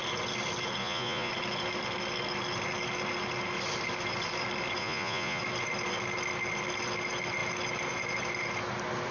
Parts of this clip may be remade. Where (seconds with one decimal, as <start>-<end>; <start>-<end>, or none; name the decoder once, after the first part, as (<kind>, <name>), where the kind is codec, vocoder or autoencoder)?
0.8-1.3 (vocoder, Vocos); 4.8-5.4